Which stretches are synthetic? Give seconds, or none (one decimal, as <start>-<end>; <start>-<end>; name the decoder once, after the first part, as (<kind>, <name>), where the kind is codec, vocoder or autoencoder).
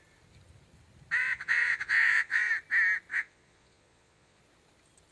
1.2-2.5 (vocoder, Vocos); 3.1-4.4